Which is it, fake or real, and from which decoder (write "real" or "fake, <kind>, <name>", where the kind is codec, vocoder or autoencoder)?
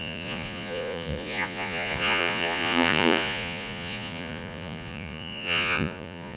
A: fake, vocoder, Vocos